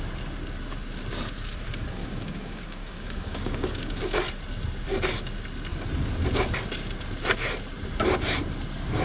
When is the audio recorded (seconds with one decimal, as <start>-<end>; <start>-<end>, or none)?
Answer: 0.0-2.0; 4.2-9.0